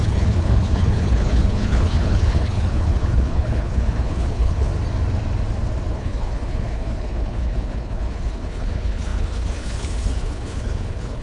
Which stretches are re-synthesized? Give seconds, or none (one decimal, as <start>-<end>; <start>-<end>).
0.0-4.7; 5.9-11.2